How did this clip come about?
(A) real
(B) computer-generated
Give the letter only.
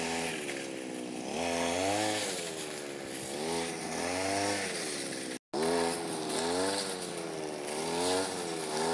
A